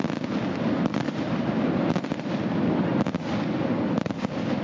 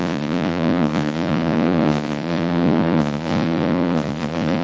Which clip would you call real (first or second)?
first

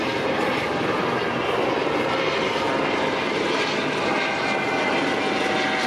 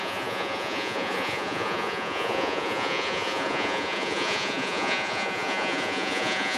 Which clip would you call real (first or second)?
first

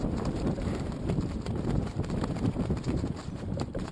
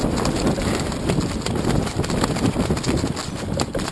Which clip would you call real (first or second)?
second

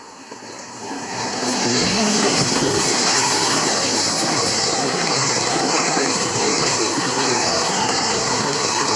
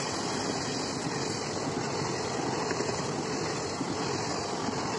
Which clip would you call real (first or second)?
second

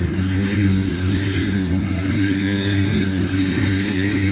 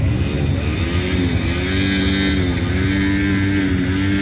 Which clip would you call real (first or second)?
second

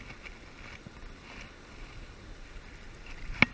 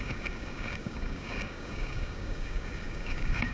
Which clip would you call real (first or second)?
first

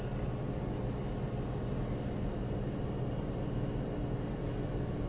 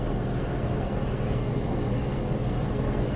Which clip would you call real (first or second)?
first